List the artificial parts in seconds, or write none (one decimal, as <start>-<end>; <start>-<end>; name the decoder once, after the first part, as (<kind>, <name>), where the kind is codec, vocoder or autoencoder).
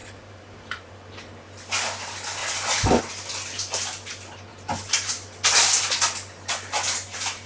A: 0.0-0.9 (vocoder, BigVGAN v2); 2.4-3.0; 4.5-5.1